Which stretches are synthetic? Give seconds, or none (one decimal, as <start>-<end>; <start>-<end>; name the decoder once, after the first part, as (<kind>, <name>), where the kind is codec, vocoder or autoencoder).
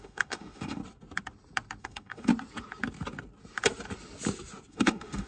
0.0-0.8 (autoencoder, DAC-VAE); 1.8-2.3; 4.7-5.3